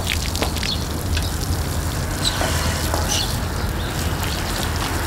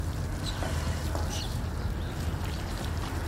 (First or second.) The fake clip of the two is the second